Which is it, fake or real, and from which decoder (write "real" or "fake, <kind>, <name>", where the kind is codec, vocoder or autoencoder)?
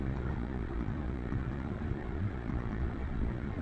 fake, vocoder, Vocos